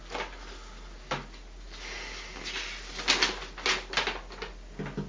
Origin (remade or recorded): recorded